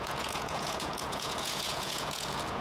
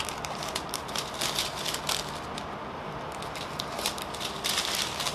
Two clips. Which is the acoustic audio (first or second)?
second